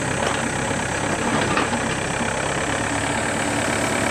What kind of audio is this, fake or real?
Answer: real